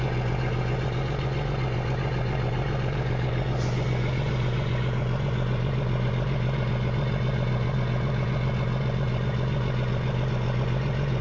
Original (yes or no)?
no